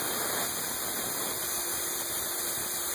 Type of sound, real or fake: fake